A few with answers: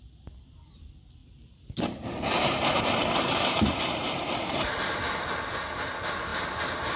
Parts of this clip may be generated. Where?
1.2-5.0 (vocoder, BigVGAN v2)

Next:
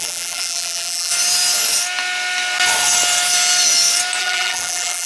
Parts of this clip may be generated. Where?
0.0-1.1 (vocoder, BigVGAN v2); 4.2-5.1

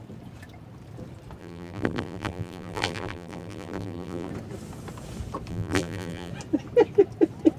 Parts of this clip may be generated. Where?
1.4-4.3 (vocoder, BigVGAN v2); 5.5-6.3

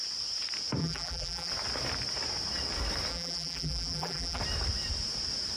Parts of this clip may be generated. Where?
0.8-1.5 (vocoder, BigVGAN v2); 3.1-4.4